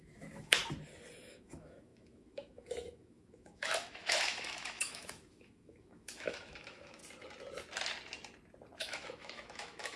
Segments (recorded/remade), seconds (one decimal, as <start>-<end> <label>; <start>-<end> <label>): 0.0-0.6 remade; 0.6-1.3 recorded; 1.3-7.0 remade; 7.0-8.8 recorded; 8.8-10.0 remade